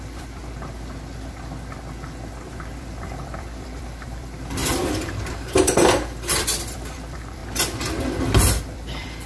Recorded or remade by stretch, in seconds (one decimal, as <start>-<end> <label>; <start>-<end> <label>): 0.0-0.4 remade; 0.4-2.5 recorded; 2.5-7.4 remade; 7.4-8.6 recorded; 8.6-9.3 remade